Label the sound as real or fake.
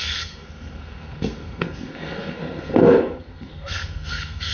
fake